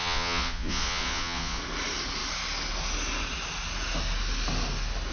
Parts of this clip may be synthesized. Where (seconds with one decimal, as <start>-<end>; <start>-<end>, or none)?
0.0-1.6